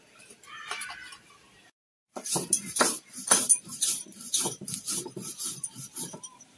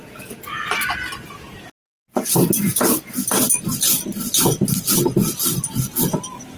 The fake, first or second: first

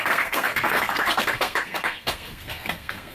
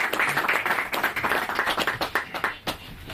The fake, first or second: first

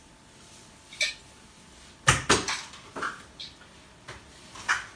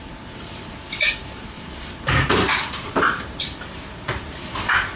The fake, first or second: second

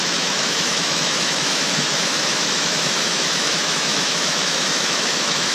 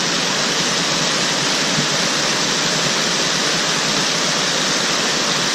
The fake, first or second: first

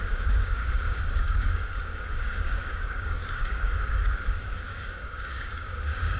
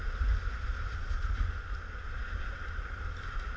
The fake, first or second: first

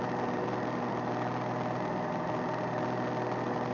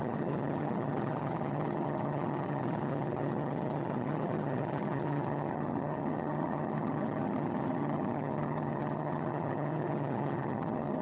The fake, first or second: second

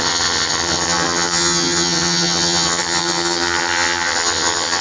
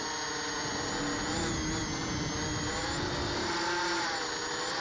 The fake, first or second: first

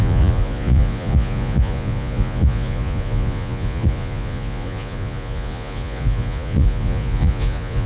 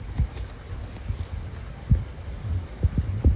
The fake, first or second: first